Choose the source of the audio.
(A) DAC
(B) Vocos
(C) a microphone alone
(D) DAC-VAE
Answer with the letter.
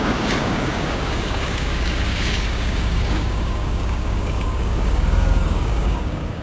A